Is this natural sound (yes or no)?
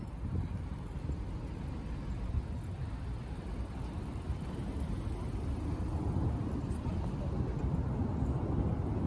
yes